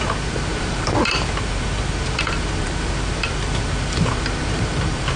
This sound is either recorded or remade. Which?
remade